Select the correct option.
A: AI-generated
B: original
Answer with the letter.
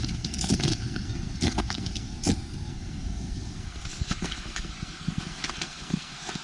A